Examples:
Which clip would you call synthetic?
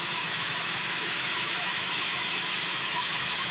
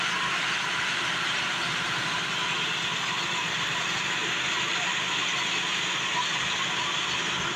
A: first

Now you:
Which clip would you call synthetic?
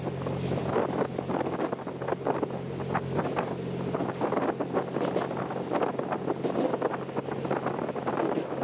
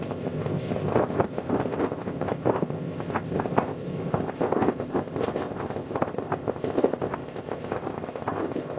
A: second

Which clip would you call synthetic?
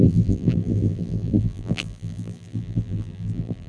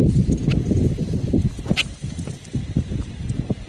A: first